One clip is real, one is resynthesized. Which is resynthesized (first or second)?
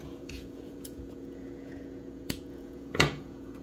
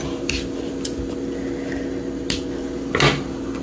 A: first